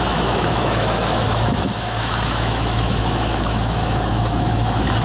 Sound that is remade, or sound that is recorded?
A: remade